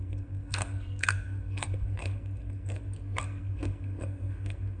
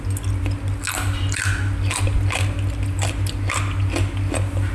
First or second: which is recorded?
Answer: second